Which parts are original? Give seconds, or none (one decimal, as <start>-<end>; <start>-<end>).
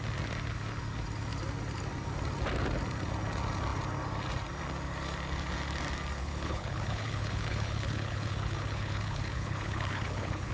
0.0-6.2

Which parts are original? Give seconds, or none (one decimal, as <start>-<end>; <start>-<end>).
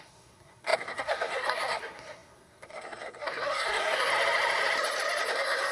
4.1-5.3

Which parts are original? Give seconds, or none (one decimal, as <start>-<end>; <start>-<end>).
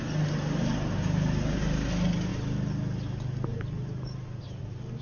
0.0-5.0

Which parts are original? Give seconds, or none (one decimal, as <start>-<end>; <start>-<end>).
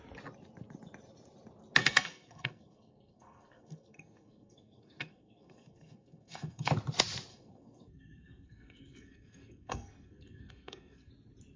0.0-1.8; 6.7-7.3; 11.1-11.6